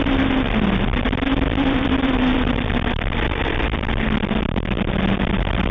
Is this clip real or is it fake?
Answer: fake